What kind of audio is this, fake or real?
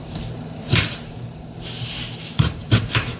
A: fake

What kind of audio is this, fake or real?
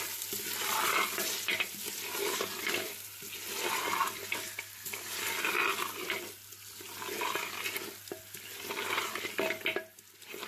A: real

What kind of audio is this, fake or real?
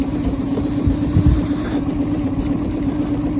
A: fake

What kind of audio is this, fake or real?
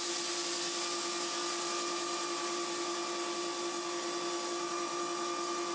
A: real